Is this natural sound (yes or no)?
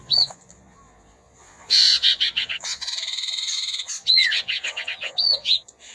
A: no